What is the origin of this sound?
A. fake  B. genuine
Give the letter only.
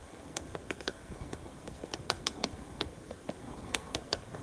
A